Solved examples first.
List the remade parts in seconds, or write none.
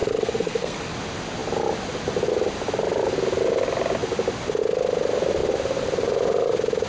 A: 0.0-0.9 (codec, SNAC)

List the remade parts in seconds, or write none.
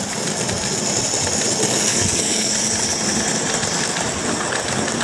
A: 1.9-2.6 (codec, SNAC)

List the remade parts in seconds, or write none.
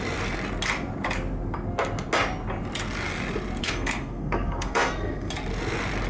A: 3.6-5.3 (codec, SNAC)